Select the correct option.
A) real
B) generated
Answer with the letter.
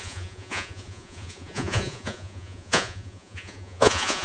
B